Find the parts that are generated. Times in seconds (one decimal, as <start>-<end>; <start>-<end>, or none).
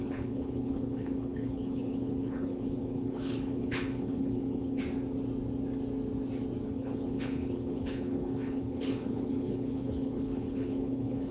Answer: 0.0-4.8; 6.7-11.3